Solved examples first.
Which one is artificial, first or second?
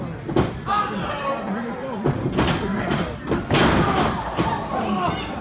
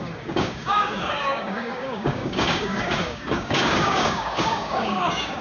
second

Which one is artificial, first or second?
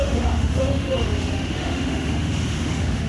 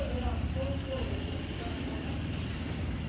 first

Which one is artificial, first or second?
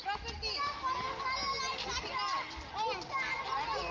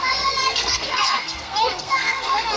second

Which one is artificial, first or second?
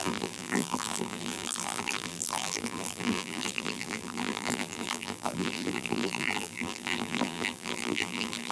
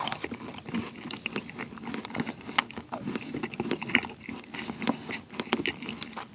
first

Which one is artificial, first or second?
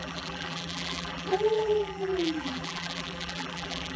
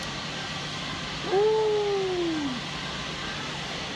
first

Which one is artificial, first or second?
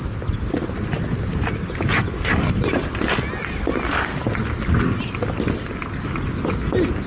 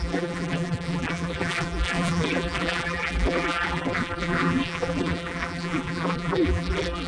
second